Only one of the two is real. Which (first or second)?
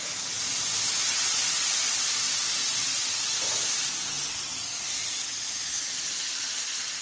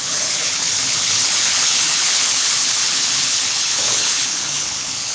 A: first